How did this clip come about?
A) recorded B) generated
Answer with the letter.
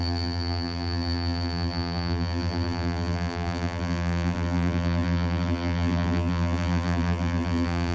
B